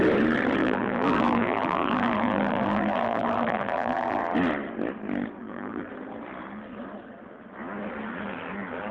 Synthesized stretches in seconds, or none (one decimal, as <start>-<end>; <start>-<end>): 0.6-4.2; 5.4-5.9